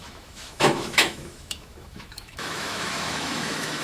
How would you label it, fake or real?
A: fake